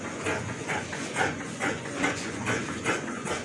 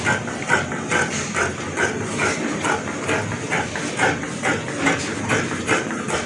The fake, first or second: first